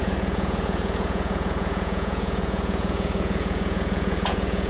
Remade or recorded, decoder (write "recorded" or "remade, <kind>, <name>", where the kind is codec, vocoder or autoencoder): remade, vocoder, Vocos